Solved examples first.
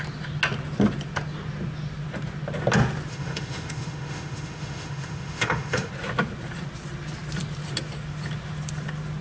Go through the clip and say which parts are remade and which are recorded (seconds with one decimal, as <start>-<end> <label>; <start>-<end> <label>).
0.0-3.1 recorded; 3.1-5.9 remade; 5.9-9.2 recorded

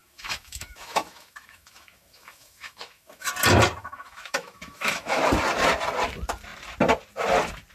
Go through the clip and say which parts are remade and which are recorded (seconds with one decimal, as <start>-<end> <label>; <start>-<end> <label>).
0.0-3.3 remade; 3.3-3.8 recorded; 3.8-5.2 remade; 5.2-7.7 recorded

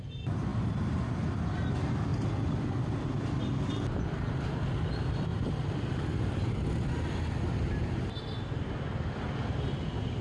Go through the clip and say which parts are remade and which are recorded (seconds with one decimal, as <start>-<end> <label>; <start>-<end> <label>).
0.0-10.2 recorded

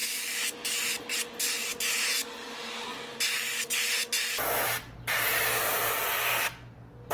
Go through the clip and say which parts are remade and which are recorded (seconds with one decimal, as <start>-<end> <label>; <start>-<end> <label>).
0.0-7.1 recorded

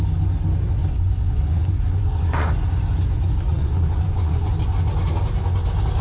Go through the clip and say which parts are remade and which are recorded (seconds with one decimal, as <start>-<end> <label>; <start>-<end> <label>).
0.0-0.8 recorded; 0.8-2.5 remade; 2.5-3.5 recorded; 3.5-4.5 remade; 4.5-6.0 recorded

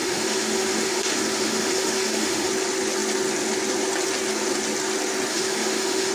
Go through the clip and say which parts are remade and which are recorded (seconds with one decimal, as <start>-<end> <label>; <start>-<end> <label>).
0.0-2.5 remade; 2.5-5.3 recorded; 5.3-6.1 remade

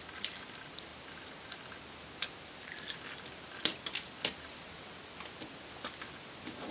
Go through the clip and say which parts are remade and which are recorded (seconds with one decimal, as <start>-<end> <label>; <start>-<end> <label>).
0.0-6.7 recorded